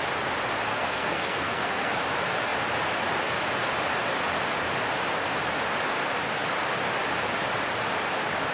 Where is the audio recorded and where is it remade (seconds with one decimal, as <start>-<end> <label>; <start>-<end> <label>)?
0.0-0.7 recorded; 0.7-2.0 remade; 2.0-8.5 recorded

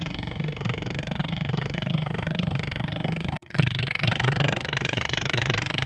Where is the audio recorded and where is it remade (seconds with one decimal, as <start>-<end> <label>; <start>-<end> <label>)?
0.0-5.9 remade

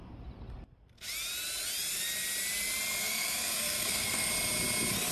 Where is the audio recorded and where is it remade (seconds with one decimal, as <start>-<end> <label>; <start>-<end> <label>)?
0.0-3.0 recorded; 3.0-4.3 remade; 4.3-5.1 recorded

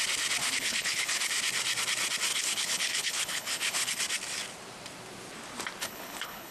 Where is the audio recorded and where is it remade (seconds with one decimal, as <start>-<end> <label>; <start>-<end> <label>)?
0.0-0.4 recorded; 0.4-1.3 remade; 1.3-2.3 recorded; 2.3-4.0 remade; 4.0-5.8 recorded; 5.8-6.5 remade

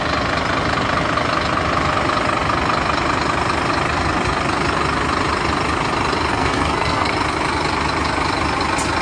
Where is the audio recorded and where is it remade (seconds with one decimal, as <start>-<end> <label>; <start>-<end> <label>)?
0.0-6.3 recorded; 6.3-7.1 remade; 7.1-9.0 recorded

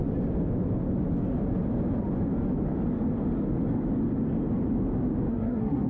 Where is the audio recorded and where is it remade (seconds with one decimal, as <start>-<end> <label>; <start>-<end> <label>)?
0.0-5.3 recorded; 5.3-5.9 remade

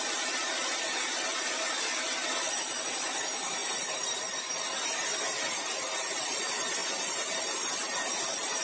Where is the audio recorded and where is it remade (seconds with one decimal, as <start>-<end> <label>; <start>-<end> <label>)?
0.0-1.3 recorded; 1.3-2.8 remade; 2.8-6.8 recorded; 6.8-7.4 remade; 7.4-8.6 recorded